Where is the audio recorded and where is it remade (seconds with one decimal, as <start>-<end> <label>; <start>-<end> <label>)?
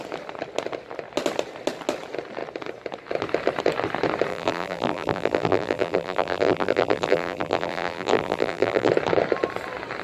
0.0-4.3 recorded; 4.3-8.9 remade; 8.9-10.0 recorded